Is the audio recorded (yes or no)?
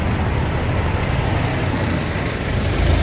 yes